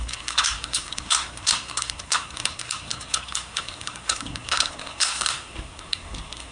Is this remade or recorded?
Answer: remade